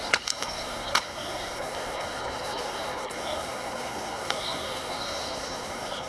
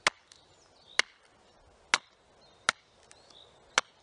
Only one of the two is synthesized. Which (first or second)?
first